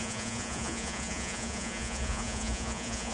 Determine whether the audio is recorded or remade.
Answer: remade